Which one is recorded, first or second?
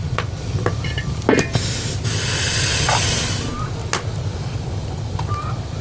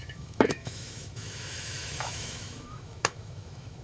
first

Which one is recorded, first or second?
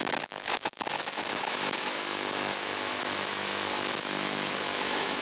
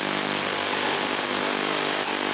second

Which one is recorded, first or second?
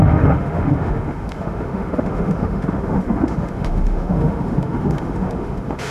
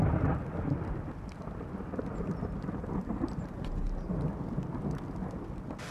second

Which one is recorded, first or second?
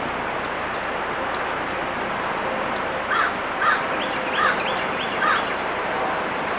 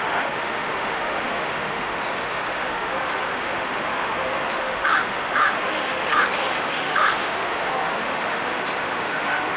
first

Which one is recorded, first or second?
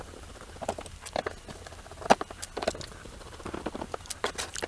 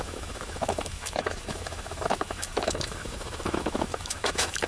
first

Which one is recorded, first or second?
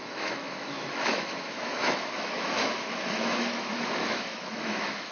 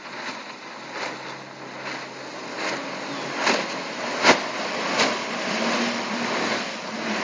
second